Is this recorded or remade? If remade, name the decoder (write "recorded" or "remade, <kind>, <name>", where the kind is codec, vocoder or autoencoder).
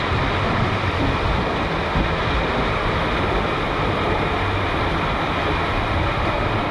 recorded